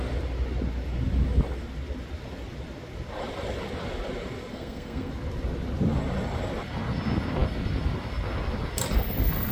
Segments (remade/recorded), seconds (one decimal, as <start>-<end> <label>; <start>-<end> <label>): 0.0-4.5 recorded; 4.5-5.1 remade; 5.1-9.5 recorded